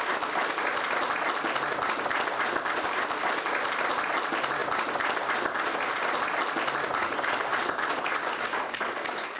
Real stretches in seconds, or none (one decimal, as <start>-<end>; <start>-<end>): 0.0-7.0